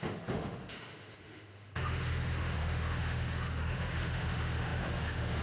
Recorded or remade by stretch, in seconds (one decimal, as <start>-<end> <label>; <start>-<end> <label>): 0.0-5.4 remade